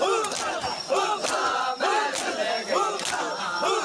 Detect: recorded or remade recorded